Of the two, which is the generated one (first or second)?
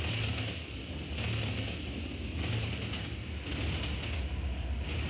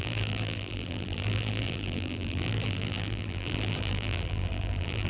second